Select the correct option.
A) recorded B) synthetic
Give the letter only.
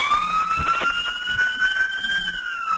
A